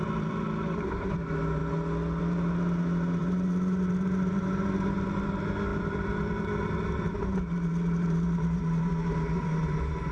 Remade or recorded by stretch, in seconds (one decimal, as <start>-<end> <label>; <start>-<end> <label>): 0.0-1.6 remade; 1.6-2.2 recorded; 2.2-10.1 remade